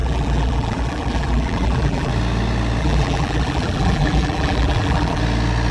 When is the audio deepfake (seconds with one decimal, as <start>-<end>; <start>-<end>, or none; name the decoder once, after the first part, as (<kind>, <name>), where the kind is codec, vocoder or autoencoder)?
0.0-2.1 (vocoder, BigVGAN v2); 2.8-5.2